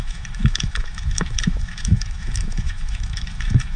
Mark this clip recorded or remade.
remade